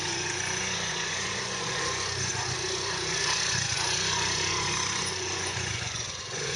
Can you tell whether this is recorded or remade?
remade